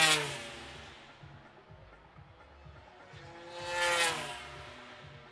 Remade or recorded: recorded